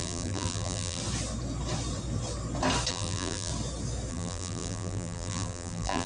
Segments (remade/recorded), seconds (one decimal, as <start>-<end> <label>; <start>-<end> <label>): 0.0-1.0 remade; 1.0-2.9 recorded; 2.9-3.5 remade; 3.5-4.1 recorded; 4.1-6.1 remade

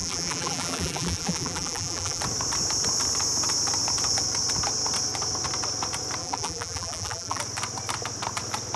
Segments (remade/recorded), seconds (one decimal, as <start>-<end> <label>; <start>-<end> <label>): 0.0-2.2 remade; 2.2-6.2 recorded; 6.2-7.4 remade; 7.4-8.8 recorded

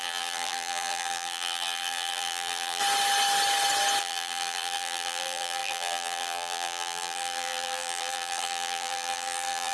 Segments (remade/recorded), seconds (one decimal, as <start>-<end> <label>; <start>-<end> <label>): 0.0-2.8 remade; 2.8-4.0 recorded; 4.0-9.7 remade